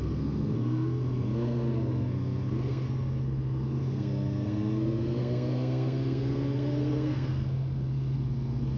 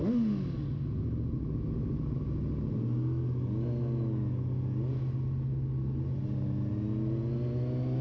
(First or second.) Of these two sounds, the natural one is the second